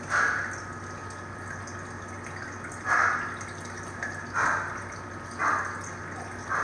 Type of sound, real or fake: real